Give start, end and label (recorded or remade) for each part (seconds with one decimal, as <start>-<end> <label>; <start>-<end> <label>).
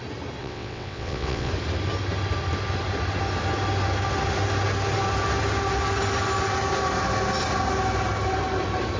0.0-0.4 recorded; 0.4-1.5 remade; 1.5-9.0 recorded